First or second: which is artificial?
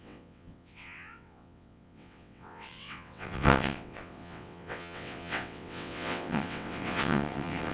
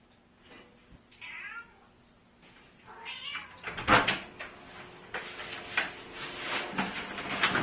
first